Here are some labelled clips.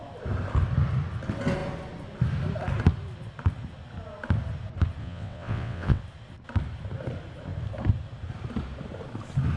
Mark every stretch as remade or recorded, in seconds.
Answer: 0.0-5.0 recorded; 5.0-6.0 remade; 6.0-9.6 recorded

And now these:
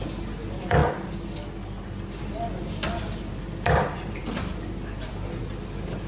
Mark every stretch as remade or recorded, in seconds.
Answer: 0.0-6.1 recorded

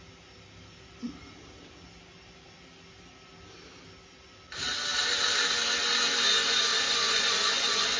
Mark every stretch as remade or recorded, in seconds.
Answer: 0.0-6.7 recorded; 6.7-8.0 remade

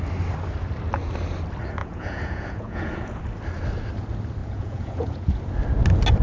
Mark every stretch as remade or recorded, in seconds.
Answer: 0.0-1.8 recorded; 1.8-3.2 remade; 3.2-4.4 recorded; 4.4-5.4 remade; 5.4-6.2 recorded